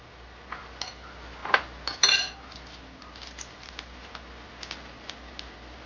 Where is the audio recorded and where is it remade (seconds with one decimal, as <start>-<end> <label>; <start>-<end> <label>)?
0.0-5.9 recorded